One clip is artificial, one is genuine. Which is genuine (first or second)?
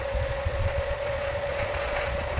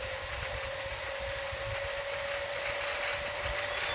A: second